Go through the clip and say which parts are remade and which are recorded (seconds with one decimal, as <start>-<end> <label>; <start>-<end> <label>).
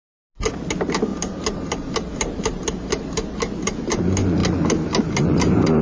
0.0-1.1 recorded; 1.1-2.6 remade; 2.6-5.8 recorded